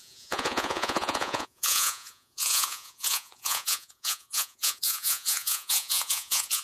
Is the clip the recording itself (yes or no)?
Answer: no